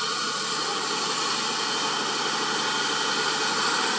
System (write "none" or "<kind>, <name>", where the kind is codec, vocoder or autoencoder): none